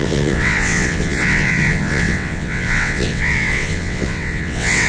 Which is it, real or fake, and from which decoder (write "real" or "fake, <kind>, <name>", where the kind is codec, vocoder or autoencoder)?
fake, vocoder, WaveNeXt